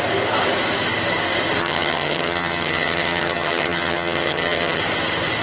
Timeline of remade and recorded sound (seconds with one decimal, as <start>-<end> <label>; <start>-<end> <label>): 0.0-1.6 recorded; 1.6-4.8 remade; 4.8-5.4 recorded